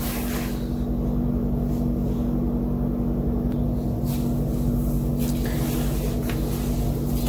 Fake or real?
real